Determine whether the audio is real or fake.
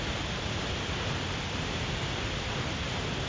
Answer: real